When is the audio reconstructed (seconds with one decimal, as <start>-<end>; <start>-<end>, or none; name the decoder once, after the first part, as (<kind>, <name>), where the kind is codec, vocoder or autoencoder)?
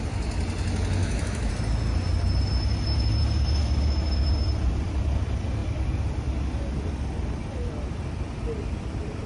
1.0-1.5 (autoencoder, DAC-VAE); 3.6-4.3